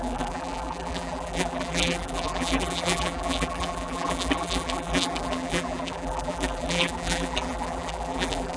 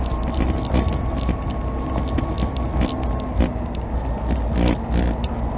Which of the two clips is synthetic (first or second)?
first